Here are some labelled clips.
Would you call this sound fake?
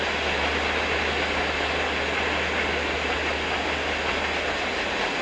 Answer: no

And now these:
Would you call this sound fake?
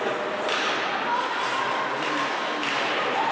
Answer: no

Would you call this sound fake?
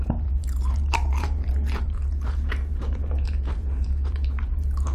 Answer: yes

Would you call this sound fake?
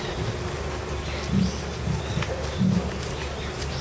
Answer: no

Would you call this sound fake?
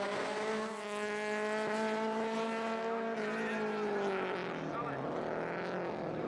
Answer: no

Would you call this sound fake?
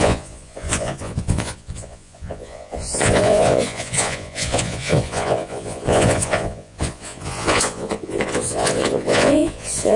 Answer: yes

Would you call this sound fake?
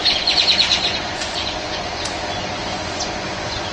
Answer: yes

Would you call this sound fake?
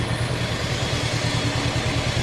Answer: no